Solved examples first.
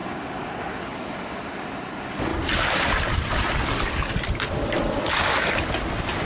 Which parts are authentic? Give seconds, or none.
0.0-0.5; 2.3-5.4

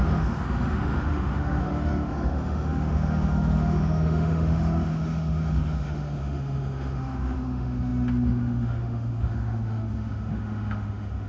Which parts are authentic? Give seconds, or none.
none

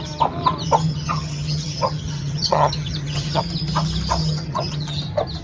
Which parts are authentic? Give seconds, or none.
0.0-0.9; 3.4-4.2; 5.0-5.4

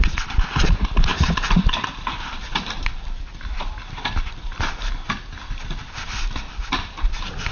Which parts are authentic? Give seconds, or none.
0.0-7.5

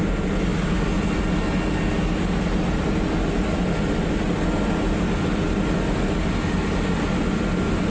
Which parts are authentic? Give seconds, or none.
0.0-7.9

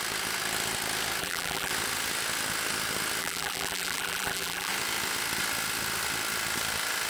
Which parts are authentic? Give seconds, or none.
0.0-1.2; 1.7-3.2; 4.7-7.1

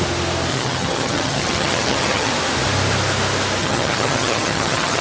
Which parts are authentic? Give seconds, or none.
0.0-0.5; 2.3-3.6